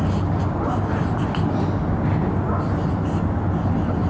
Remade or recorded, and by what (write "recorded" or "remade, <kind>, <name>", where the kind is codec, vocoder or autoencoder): recorded